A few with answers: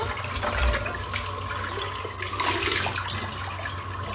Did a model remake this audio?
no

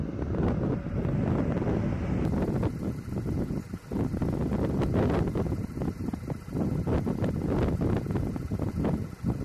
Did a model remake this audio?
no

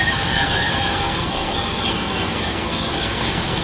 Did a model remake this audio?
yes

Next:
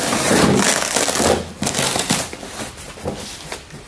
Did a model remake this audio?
no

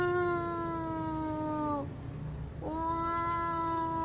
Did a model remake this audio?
no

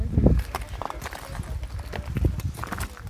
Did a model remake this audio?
no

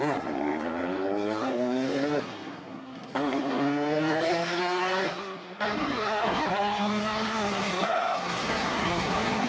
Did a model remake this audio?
yes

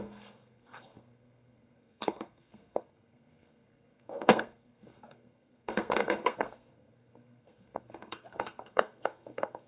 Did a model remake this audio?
yes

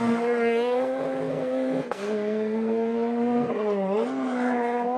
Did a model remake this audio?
yes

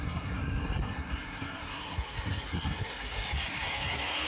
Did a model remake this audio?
yes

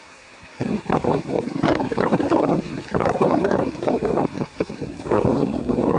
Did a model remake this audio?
yes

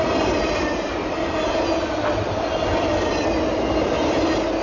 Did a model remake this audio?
no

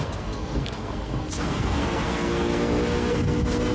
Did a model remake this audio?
yes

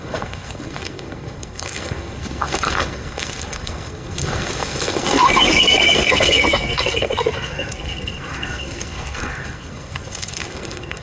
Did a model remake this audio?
yes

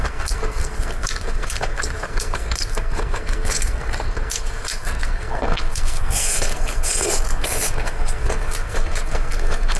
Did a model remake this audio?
yes